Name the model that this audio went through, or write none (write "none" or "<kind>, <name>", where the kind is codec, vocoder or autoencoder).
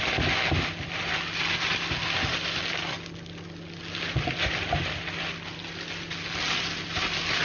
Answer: none